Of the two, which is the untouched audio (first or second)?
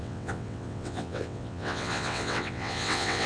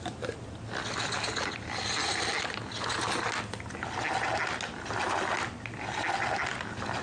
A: second